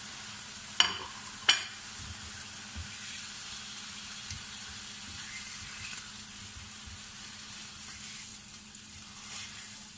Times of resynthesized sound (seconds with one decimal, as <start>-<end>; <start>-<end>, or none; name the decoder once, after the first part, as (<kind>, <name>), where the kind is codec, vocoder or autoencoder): none